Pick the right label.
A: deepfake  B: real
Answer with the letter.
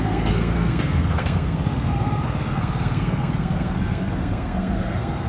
A